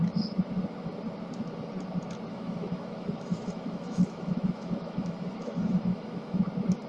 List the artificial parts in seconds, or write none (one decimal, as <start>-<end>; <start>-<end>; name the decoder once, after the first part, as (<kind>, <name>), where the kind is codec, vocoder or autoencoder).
2.3-6.4 (autoencoder, DAC-VAE)